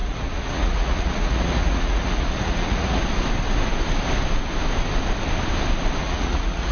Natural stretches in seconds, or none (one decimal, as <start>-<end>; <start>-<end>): 3.0-6.0